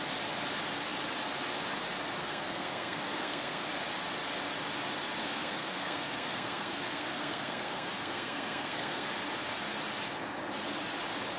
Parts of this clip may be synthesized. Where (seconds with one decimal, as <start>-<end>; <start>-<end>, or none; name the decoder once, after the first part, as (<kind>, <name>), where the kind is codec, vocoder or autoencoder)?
2.2-3.7 (codec, SNAC); 5.2-9.1